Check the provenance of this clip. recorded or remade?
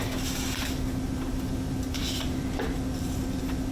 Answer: recorded